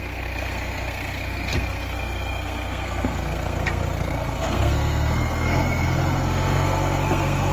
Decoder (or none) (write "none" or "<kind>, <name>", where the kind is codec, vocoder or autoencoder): codec, SNAC